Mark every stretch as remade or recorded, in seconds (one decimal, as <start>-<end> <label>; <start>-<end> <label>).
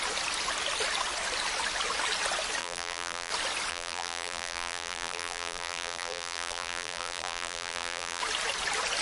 0.0-2.6 recorded; 2.6-3.3 remade; 3.3-3.7 recorded; 3.7-8.2 remade; 8.2-9.0 recorded